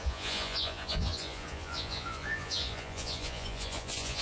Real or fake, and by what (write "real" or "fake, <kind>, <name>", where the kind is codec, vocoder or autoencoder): fake, vocoder, Vocos